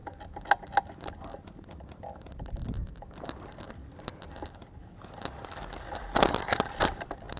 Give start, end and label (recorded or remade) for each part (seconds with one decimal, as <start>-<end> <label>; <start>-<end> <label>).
0.0-7.4 recorded